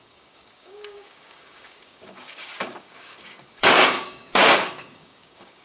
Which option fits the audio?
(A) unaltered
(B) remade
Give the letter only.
B